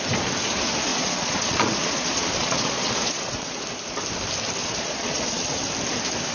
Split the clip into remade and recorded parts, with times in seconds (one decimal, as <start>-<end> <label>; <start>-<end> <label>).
0.0-0.9 recorded; 0.9-3.6 remade; 3.6-4.6 recorded; 4.6-5.6 remade; 5.6-6.3 recorded